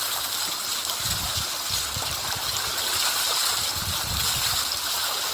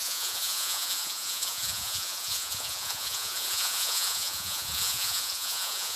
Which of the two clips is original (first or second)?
first